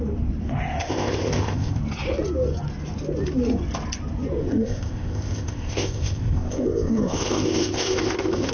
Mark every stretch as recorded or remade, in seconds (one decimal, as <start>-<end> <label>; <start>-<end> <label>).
0.0-0.8 recorded; 0.8-1.8 remade; 1.8-4.4 recorded; 4.4-8.5 remade